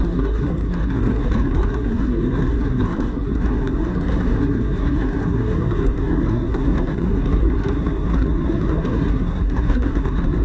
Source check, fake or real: fake